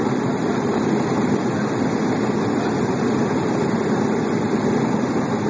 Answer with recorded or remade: recorded